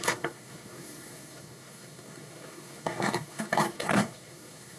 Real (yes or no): no